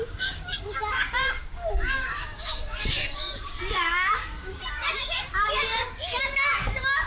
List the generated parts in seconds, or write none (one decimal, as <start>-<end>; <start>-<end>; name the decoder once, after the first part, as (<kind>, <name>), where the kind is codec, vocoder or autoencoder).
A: 0.0-7.1 (codec, DAC)